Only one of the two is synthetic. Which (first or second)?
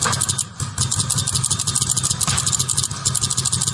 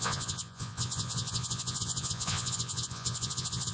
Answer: second